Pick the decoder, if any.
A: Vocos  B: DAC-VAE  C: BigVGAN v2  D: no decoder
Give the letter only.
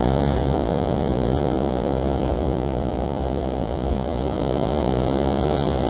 A